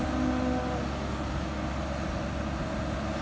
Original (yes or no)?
yes